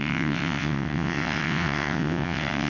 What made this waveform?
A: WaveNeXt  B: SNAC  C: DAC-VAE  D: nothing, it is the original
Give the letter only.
A